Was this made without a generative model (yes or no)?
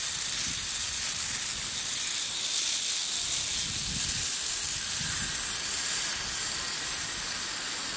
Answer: yes